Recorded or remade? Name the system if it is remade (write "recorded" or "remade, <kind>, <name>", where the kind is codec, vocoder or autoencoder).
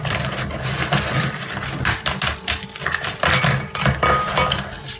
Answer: recorded